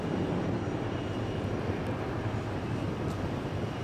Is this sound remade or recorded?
remade